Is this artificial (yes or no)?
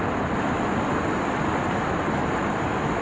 no